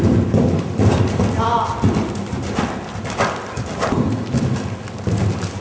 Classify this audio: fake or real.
real